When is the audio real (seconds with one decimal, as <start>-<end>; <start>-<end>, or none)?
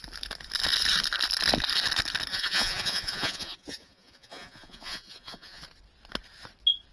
0.0-2.3; 5.6-6.9